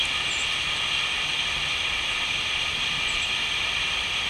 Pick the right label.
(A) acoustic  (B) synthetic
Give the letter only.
B